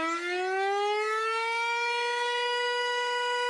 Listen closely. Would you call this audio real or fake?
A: fake